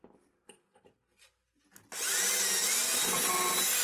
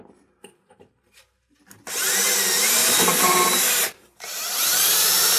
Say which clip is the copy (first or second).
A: second